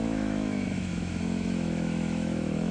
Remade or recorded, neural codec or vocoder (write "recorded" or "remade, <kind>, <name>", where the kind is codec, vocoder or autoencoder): remade, autoencoder, DAC-VAE